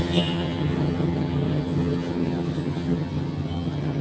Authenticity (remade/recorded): remade